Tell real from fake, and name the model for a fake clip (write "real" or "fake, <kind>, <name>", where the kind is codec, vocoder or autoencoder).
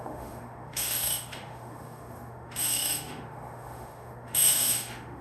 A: fake, autoencoder, DAC-VAE